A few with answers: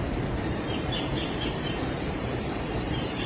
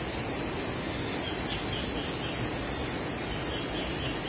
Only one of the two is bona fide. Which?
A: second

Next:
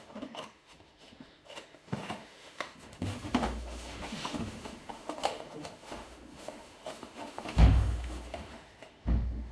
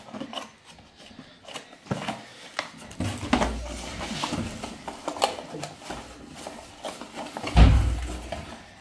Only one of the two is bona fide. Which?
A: second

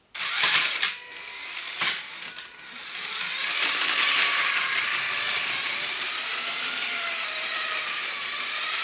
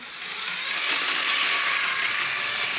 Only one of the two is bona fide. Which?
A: second